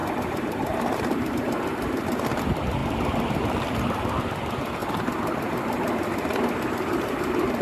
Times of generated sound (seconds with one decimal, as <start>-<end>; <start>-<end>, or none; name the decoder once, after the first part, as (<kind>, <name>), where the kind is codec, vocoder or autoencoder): 0.0-1.3 (vocoder, BigVGAN v2)